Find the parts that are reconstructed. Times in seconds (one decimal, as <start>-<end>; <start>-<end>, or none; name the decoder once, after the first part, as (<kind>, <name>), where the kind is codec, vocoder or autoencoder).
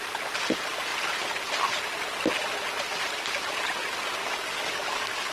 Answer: 4.2-5.3 (codec, DAC)